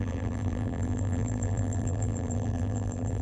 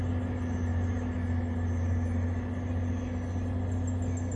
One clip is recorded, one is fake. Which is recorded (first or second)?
second